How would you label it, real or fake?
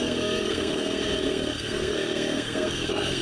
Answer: fake